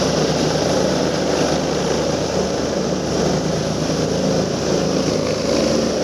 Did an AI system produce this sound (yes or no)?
no